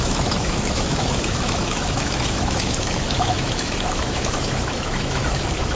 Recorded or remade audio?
remade